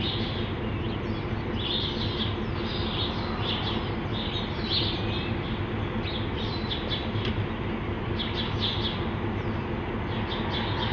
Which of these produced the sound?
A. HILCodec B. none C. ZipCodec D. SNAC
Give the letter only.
B